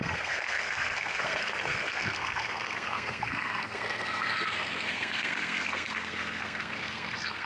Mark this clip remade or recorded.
remade